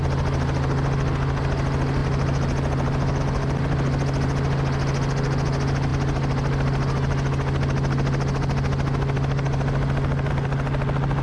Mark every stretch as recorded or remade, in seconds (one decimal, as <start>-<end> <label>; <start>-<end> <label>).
0.0-11.2 recorded